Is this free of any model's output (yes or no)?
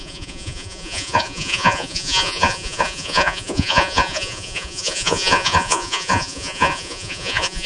no